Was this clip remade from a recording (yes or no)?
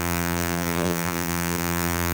yes